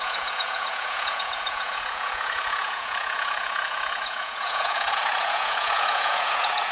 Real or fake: fake